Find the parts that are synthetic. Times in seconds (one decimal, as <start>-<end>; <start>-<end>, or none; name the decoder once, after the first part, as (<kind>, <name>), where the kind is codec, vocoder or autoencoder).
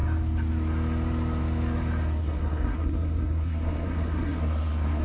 2.2-5.0 (codec, SNAC)